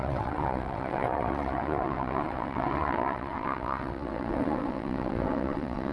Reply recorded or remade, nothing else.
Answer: remade